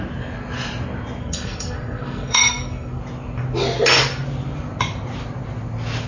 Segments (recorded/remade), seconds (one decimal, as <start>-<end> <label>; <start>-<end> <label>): 0.0-1.2 recorded; 1.2-3.0 remade; 3.0-6.1 recorded